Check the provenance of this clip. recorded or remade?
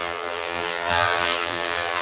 remade